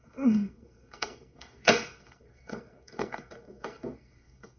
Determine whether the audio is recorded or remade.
remade